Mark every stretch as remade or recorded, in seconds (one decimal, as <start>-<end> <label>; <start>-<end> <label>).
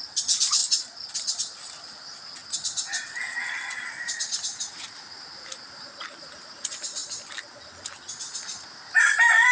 0.0-9.5 recorded